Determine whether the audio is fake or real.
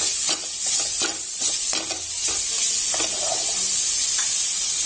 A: real